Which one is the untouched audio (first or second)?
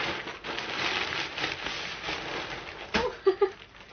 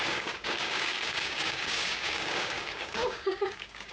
first